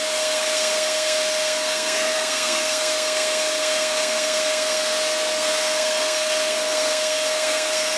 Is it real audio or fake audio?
fake